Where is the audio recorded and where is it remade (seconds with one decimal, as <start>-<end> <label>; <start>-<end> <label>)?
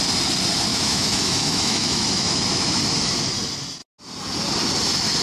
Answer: 0.0-0.7 recorded; 0.7-2.8 remade; 2.8-5.2 recorded